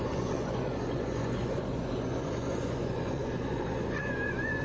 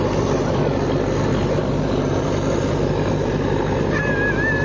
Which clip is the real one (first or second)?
second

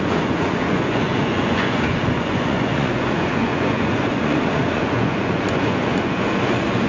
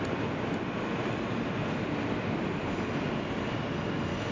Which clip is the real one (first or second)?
second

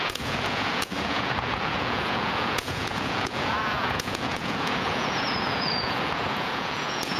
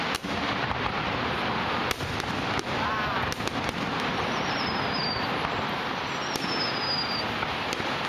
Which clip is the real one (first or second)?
second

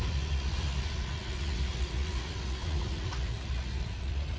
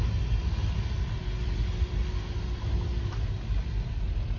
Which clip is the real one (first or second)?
second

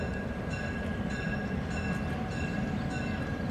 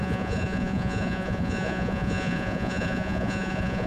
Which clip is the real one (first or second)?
first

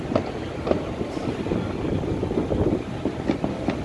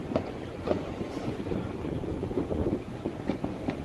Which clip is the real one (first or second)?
first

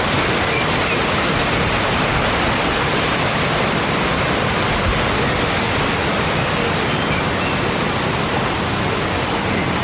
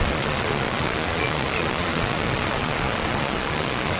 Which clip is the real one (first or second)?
first